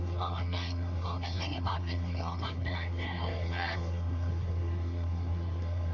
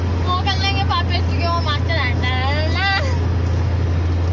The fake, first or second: first